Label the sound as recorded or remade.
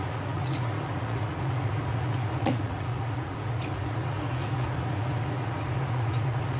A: remade